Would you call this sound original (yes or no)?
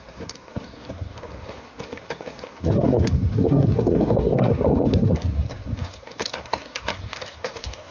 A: no